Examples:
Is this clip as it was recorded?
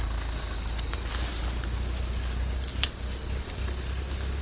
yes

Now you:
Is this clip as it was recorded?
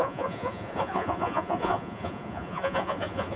no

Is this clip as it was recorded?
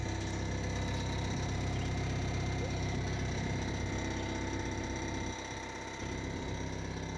yes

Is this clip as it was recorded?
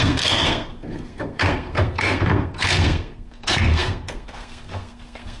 no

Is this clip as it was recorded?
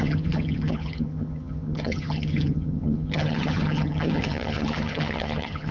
no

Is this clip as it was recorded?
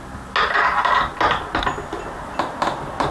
yes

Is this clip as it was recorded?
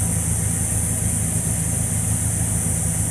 yes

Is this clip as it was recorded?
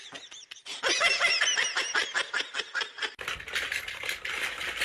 yes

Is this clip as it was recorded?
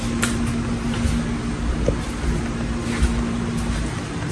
yes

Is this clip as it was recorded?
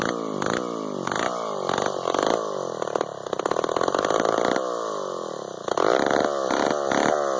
yes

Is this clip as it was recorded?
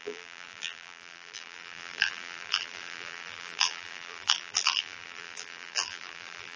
no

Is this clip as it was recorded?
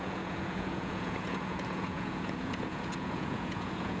no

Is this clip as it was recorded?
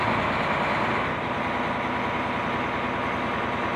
yes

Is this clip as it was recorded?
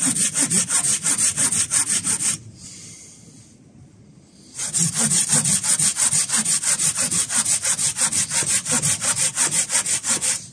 yes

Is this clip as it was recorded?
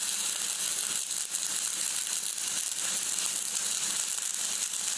yes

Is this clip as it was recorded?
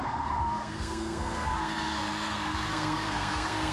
no